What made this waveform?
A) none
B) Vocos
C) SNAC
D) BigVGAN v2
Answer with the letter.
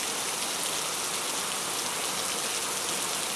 A